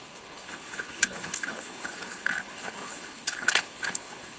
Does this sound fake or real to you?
fake